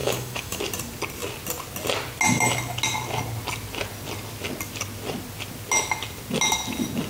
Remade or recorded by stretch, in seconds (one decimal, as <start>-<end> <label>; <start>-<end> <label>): 0.0-0.6 remade; 0.6-7.1 recorded